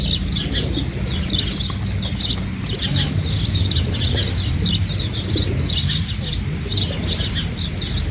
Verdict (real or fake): real